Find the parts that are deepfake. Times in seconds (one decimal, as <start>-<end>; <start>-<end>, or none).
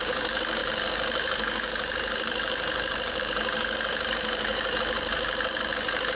0.0-6.1